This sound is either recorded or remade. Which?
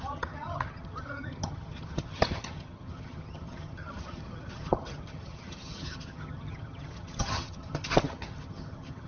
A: remade